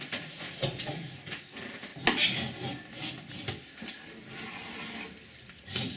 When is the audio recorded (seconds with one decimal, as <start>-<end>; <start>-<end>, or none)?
1.9-5.5